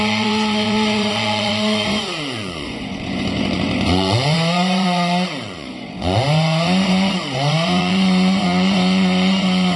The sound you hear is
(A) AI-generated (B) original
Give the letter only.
A